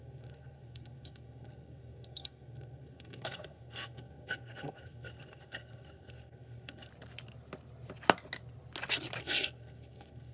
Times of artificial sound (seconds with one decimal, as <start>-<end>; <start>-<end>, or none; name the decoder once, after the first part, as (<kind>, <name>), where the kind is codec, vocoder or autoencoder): 0.0-6.9 (codec, SNAC); 9.2-10.3